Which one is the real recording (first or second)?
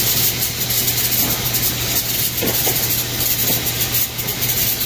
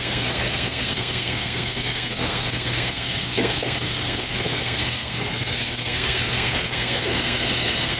first